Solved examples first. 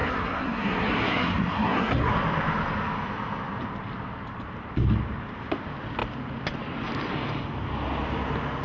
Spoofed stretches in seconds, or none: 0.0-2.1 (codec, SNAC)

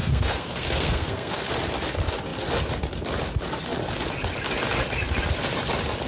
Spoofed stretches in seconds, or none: 0.0-1.5 (codec, SNAC)

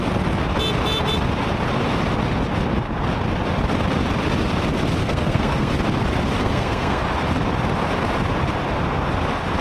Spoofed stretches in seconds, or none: 5.0-5.7 (codec, SNAC); 6.4-7.0

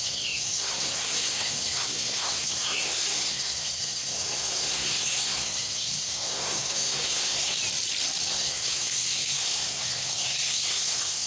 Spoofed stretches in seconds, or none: 0.0-7.6 (codec, SNAC); 8.3-11.3

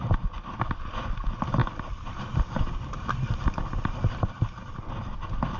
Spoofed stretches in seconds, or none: none